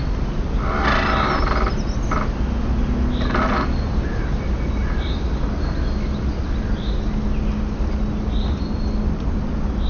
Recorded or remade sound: recorded